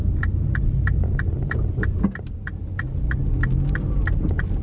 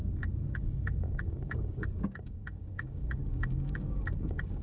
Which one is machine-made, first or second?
second